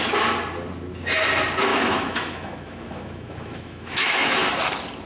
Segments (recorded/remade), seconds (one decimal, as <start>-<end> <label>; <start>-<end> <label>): 0.0-1.7 recorded; 1.7-4.5 remade; 4.5-5.1 recorded

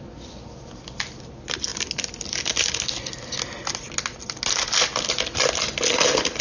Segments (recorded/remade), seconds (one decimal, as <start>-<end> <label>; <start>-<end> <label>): 0.0-6.4 recorded

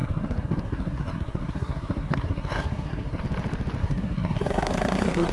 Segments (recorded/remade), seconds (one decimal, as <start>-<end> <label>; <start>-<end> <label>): 0.0-3.2 remade; 3.2-3.8 recorded; 3.8-5.3 remade

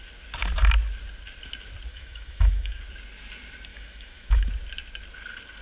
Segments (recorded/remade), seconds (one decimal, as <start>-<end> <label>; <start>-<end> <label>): 0.0-1.9 recorded; 1.9-2.8 remade; 2.8-3.7 recorded; 3.7-4.5 remade; 4.5-5.6 recorded